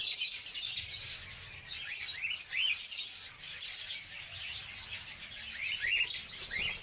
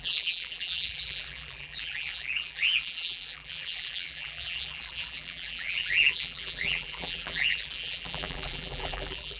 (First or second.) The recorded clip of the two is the first